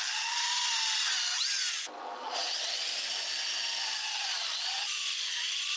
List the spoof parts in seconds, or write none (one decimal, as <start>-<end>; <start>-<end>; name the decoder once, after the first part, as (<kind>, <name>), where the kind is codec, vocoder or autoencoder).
0.0-0.7 (vocoder, Vocos); 2.2-2.9; 3.8-5.8